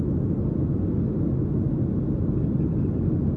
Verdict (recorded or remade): recorded